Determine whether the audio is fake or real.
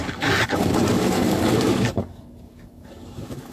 fake